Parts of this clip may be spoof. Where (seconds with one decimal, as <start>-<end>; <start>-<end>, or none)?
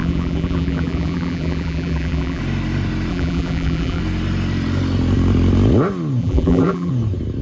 0.0-2.4; 3.1-4.0; 6.2-6.9